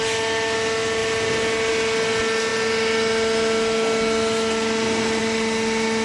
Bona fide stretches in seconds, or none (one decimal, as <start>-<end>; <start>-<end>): 0.0-6.0

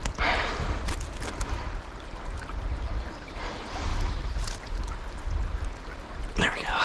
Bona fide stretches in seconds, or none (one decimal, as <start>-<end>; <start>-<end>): 0.0-6.8

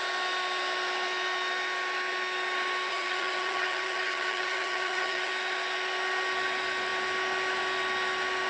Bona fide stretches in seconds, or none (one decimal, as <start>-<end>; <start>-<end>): 0.0-2.9; 5.3-8.5